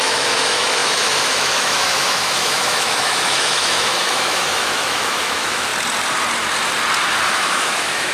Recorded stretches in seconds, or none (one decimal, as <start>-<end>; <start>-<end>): 5.7-7.3